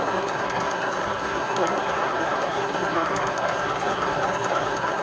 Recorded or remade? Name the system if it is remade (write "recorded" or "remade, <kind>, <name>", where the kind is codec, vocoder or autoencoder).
remade, codec, SNAC